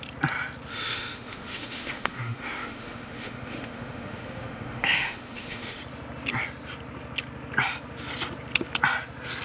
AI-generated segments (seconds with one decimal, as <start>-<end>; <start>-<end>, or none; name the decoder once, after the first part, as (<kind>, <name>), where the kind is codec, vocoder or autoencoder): 0.7-5.8 (autoencoder, DAC-VAE)